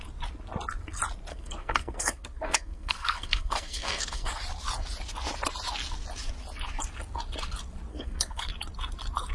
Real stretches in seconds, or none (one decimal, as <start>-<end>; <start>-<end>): 0.0-1.3; 4.4-7.9; 8.5-9.3